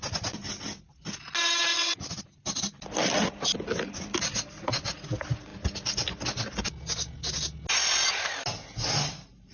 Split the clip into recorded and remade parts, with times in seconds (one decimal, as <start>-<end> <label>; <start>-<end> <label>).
0.0-1.7 recorded; 1.7-2.2 remade; 2.2-9.5 recorded